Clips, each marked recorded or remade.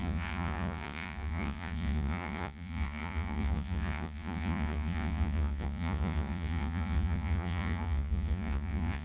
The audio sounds remade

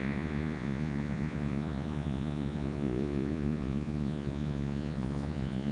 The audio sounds remade